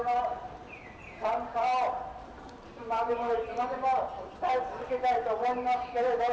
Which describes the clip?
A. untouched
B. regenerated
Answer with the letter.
B